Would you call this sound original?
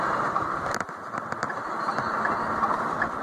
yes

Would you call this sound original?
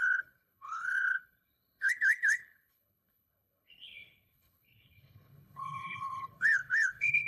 no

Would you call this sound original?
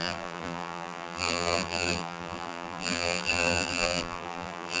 no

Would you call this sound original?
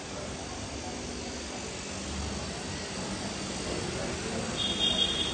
yes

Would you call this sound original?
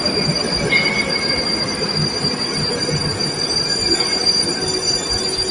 yes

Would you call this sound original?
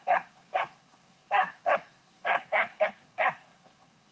no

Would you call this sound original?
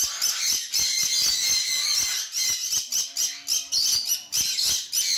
yes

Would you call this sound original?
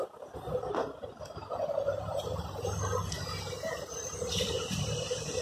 yes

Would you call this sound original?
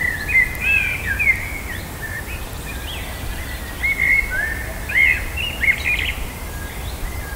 yes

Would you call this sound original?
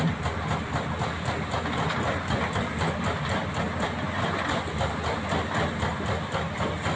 yes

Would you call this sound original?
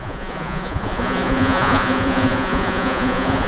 no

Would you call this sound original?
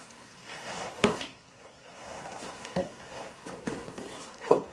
no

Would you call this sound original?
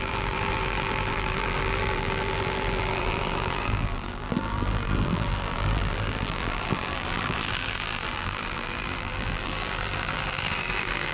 no